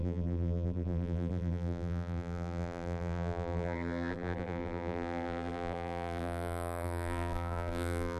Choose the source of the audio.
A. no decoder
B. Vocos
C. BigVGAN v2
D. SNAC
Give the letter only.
C